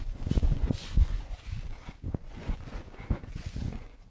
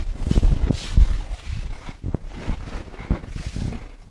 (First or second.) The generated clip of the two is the first